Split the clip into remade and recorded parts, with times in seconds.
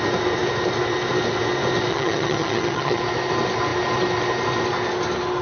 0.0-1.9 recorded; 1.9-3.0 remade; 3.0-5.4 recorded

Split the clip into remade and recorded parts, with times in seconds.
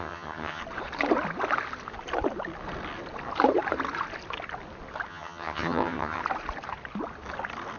0.0-0.6 remade; 0.6-5.1 recorded; 5.1-6.2 remade; 6.2-7.8 recorded